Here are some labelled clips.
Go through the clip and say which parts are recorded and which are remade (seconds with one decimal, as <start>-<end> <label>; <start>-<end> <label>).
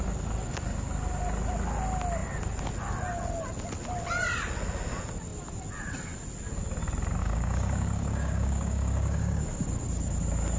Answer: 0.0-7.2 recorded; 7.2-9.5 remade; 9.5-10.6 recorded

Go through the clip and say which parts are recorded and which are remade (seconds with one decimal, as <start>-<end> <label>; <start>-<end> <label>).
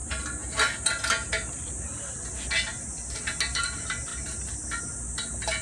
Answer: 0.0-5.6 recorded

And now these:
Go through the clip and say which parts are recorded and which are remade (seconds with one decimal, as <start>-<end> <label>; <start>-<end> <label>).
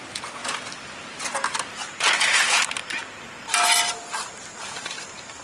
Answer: 0.0-0.4 remade; 0.4-1.7 recorded; 1.7-3.0 remade; 3.0-3.9 recorded; 3.9-5.4 remade